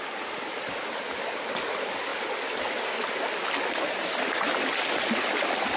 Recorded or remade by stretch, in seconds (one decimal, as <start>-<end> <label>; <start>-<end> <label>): 0.0-5.8 recorded

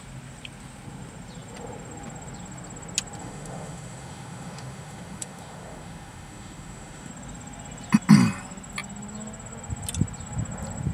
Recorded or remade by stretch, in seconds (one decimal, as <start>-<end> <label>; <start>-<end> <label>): 0.0-3.2 recorded; 3.2-7.1 remade; 7.1-10.9 recorded

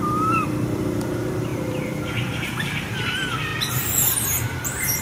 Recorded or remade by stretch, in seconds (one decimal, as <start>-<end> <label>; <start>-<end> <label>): 0.0-3.5 remade; 3.5-4.3 recorded; 4.3-5.0 remade

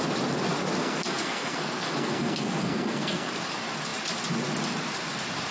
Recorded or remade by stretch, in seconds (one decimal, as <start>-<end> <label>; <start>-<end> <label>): 0.0-0.8 recorded; 0.8-3.3 remade; 3.3-5.5 recorded

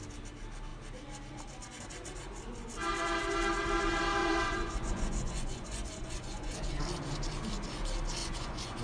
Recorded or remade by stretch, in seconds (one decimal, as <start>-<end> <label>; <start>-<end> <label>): 0.0-4.2 recorded; 4.2-6.8 remade; 6.8-8.2 recorded; 8.2-8.8 remade

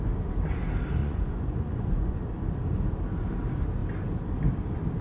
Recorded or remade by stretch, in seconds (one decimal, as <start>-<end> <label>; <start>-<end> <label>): 0.0-1.0 recorded; 1.0-2.2 remade; 2.2-5.0 recorded

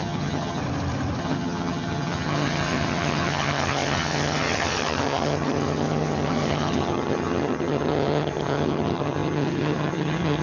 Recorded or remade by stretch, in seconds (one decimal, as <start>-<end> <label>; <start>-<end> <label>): 0.0-0.6 remade; 0.6-1.2 recorded; 1.2-10.4 remade